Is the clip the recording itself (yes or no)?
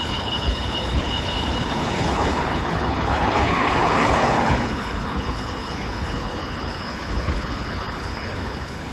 no